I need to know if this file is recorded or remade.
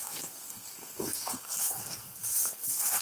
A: remade